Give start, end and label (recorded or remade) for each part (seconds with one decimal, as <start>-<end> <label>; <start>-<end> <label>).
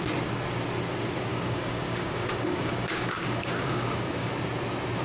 0.0-1.3 recorded; 1.3-4.3 remade; 4.3-5.0 recorded